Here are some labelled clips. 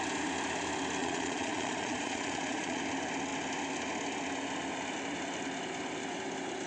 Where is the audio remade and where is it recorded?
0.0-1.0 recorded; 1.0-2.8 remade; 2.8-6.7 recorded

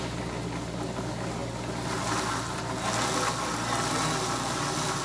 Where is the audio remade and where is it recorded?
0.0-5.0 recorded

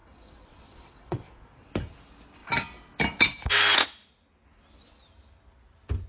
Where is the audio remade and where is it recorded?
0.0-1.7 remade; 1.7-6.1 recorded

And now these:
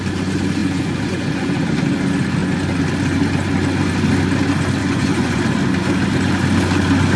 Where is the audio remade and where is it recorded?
0.0-0.6 recorded; 0.6-1.6 remade; 1.6-4.8 recorded; 4.8-5.4 remade; 5.4-7.2 recorded

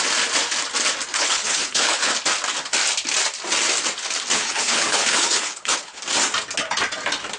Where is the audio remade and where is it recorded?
0.0-1.1 recorded; 1.1-2.1 remade; 2.1-4.3 recorded; 4.3-6.0 remade; 6.0-7.4 recorded

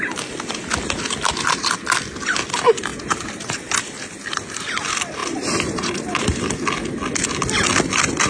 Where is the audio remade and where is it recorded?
0.0-2.9 recorded; 2.9-3.8 remade; 3.8-5.2 recorded; 5.2-6.4 remade; 6.4-8.3 recorded

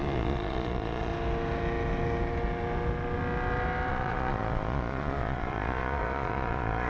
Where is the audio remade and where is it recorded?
0.0-1.1 remade; 1.1-3.9 recorded; 3.9-6.9 remade